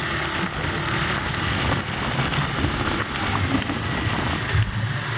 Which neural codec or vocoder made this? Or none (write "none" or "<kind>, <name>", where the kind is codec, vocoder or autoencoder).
none